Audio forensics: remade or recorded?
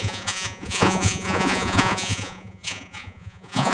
remade